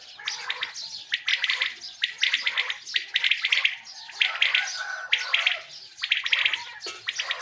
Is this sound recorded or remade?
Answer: recorded